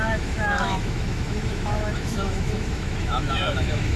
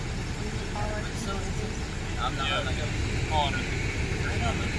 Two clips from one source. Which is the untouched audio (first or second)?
second